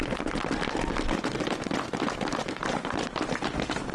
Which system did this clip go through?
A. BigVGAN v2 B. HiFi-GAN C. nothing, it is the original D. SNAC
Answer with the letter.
C